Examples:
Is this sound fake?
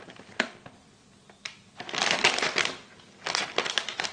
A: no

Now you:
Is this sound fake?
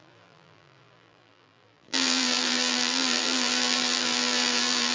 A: yes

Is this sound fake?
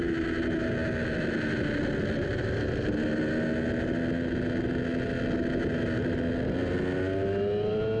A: no